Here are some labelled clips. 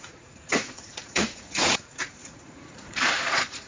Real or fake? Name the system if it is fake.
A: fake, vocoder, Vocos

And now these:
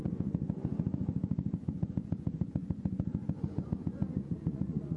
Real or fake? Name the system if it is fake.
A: fake, vocoder, Vocos